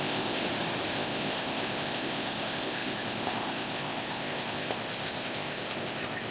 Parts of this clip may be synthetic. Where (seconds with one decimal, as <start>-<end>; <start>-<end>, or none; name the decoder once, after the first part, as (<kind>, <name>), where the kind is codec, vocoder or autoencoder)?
0.0-0.4 (codec, ZipCodec); 0.9-6.3